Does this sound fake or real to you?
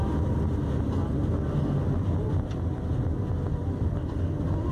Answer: real